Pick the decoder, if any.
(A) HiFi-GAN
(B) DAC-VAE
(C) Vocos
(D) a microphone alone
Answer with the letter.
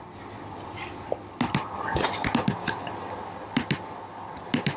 D